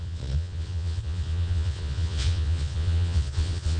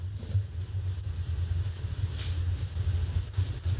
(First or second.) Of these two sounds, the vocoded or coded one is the first